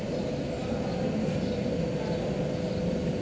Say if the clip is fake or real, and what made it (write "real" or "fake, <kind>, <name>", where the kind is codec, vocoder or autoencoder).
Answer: real